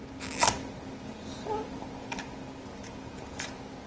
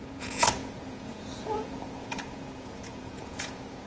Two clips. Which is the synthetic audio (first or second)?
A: second